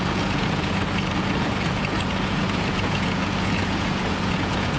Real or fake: fake